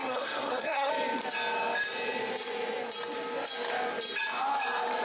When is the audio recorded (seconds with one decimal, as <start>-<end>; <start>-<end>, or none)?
0.9-5.0

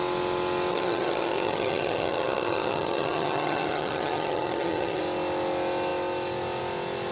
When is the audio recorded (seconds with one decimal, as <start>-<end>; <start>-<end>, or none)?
0.0-0.7; 5.0-7.1

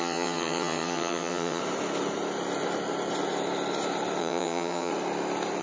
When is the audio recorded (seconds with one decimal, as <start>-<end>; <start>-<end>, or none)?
1.6-4.2; 4.9-5.6

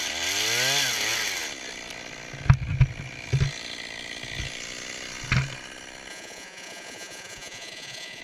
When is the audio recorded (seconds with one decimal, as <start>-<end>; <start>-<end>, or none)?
0.0-6.1

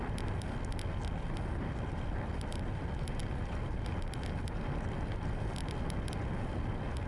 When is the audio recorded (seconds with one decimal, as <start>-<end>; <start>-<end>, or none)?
0.0-7.1

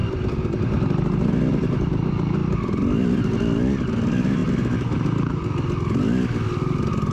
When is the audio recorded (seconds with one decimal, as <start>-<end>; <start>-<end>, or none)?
1.9-2.4; 3.9-4.4; 5.3-7.1

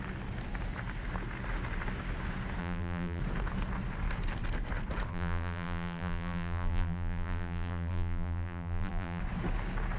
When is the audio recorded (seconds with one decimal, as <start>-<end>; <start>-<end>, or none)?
0.0-2.6; 3.2-5.1; 9.2-10.0

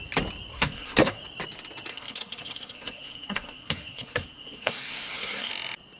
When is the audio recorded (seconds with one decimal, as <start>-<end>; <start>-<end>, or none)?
0.0-0.5; 1.2-1.9; 5.5-6.0